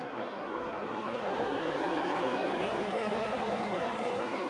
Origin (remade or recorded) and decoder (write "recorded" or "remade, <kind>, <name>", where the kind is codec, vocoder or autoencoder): remade, codec, SNAC